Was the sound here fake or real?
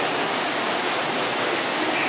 real